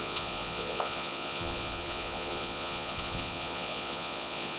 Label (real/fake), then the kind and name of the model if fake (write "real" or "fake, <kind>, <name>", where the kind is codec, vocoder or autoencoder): fake, vocoder, Vocos